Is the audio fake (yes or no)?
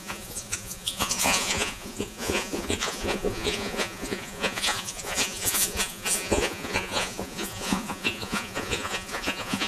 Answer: yes